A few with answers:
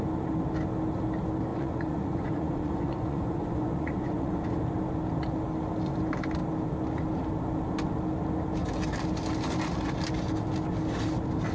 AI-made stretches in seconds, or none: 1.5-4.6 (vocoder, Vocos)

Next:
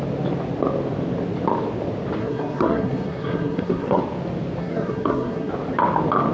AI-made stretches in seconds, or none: 2.2-4.0 (codec, SNAC); 4.6-5.5

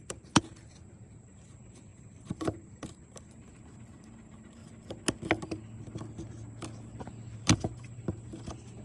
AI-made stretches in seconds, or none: 0.0-0.5 (vocoder, BigVGAN v2); 1.2-4.6; 7.0-8.8

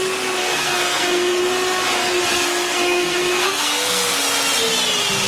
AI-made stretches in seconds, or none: 0.4-1.4 (codec, SNAC); 2.0-4.2

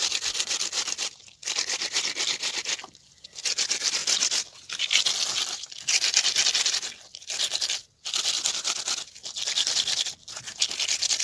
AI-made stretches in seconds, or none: none

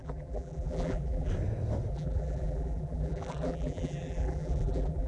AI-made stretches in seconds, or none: 0.0-1.3 (vocoder, BigVGAN v2); 1.9-5.1

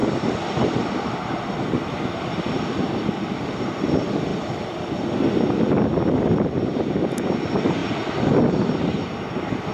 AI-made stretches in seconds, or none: 0.0-1.0 (vocoder, BigVGAN v2); 4.3-5.1